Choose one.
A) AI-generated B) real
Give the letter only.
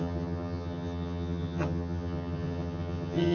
A